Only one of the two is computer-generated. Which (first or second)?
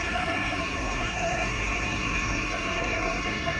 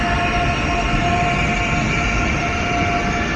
first